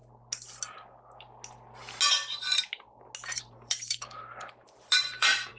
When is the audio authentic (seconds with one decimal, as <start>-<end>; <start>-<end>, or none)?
0.0-3.4